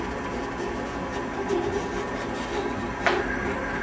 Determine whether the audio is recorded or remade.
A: recorded